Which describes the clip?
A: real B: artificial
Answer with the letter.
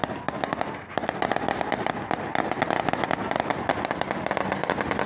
A